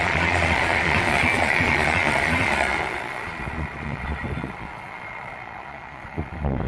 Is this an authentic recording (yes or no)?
no